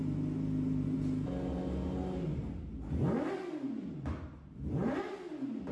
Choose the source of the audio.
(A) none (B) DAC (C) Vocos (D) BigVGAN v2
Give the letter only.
A